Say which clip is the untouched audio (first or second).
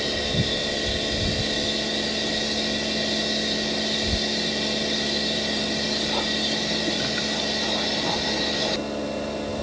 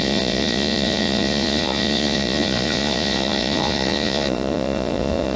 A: first